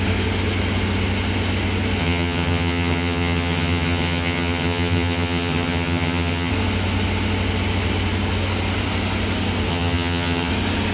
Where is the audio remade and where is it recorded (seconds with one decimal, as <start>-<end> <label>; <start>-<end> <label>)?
0.0-2.0 recorded; 2.0-6.5 remade; 6.5-9.7 recorded; 9.7-10.5 remade; 10.5-10.9 recorded